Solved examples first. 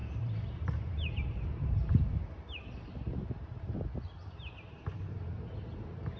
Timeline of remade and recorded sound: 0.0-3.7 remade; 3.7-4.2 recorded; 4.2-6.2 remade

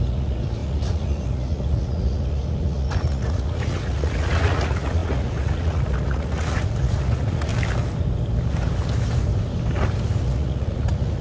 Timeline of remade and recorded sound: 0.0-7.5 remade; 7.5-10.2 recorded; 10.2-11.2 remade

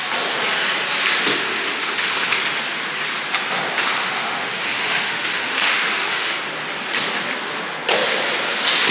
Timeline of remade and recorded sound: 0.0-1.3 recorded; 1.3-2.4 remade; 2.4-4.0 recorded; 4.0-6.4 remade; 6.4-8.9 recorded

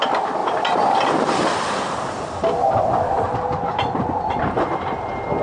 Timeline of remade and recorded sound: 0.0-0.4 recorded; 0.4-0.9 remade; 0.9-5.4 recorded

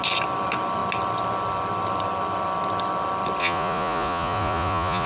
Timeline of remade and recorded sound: 0.0-3.4 recorded; 3.4-5.1 remade

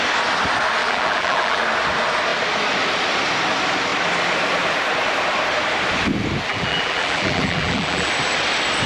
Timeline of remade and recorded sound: 0.0-0.8 recorded; 0.8-1.6 remade; 1.6-6.5 recorded; 6.5-8.1 remade; 8.1-8.9 recorded

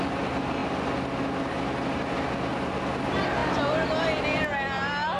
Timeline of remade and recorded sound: 0.0-5.2 recorded